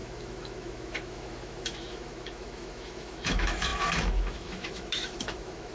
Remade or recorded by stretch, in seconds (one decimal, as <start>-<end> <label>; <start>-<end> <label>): 0.0-5.7 remade